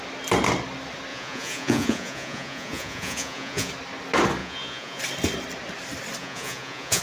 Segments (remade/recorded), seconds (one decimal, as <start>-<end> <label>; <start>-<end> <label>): 0.0-1.1 recorded; 1.1-3.7 remade; 3.7-4.4 recorded; 4.4-5.0 remade; 5.0-6.2 recorded; 6.2-7.0 remade